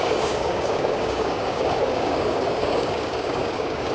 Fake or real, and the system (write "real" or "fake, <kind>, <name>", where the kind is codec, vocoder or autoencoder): fake, codec, DAC